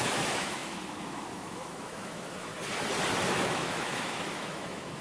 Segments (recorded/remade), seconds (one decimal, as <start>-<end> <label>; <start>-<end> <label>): 0.0-2.5 remade; 2.5-3.3 recorded; 3.3-5.0 remade